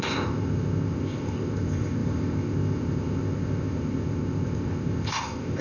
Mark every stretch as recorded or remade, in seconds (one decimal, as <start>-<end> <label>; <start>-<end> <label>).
0.0-5.6 remade